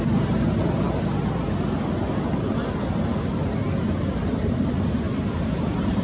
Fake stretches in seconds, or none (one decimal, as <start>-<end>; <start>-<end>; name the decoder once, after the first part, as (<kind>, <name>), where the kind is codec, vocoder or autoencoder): 0.0-0.6 (vocoder, BigVGAN v2); 3.8-6.0